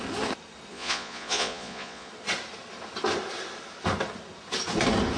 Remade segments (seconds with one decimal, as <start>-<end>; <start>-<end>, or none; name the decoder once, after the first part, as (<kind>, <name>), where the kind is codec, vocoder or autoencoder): 0.7-2.1 (vocoder, Vocos)